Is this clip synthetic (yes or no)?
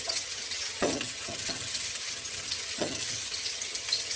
yes